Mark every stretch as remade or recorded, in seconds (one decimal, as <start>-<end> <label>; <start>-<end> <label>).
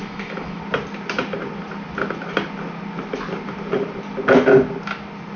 0.0-0.6 remade; 0.6-5.4 recorded